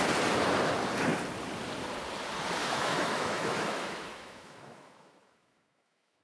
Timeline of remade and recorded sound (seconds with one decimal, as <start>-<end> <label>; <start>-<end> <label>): 0.0-2.6 recorded; 2.6-6.2 remade